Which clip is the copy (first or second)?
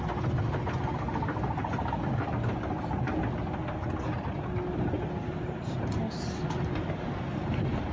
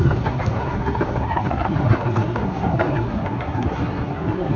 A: second